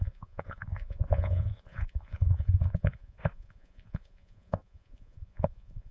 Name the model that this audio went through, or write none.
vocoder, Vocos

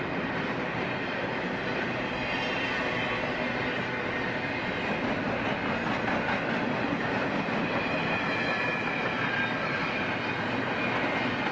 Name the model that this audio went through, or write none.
none